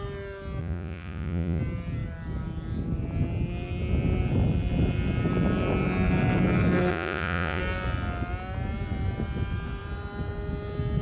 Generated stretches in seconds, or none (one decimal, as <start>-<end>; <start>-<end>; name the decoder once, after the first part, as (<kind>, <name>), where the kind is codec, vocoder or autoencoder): 0.6-1.6 (vocoder, Vocos); 6.9-7.6